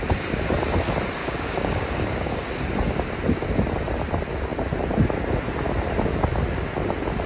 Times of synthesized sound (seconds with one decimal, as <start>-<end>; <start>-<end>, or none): 1.2-2.5